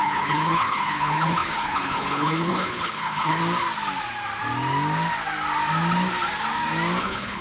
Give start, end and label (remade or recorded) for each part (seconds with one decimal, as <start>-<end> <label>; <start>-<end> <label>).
0.0-3.4 remade; 3.4-7.0 recorded; 7.0-7.4 remade